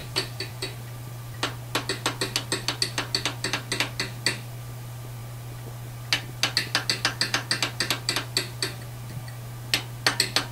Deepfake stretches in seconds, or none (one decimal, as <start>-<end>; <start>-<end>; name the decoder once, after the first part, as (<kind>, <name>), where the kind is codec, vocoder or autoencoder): 0.0-1.4 (vocoder, BigVGAN v2)